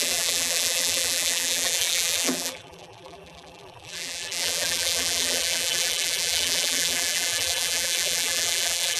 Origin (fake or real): fake